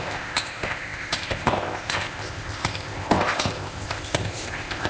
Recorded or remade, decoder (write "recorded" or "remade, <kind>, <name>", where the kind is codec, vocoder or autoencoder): remade, codec, ZipCodec